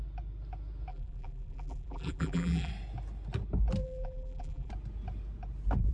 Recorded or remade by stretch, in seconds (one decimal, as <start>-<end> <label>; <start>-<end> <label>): 0.0-0.9 recorded; 0.9-2.7 remade; 2.7-3.8 recorded; 3.8-4.7 remade; 4.7-5.9 recorded